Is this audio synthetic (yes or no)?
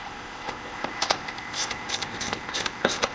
yes